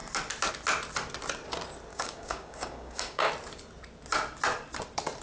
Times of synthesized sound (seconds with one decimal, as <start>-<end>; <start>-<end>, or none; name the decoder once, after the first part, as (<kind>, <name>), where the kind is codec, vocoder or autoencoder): 1.9-3.3 (codec, DAC)